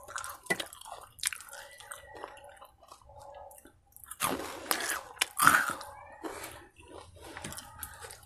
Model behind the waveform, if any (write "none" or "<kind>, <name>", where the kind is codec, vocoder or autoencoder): none